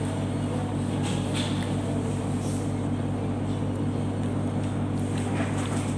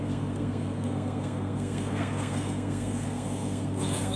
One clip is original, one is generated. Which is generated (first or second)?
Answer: second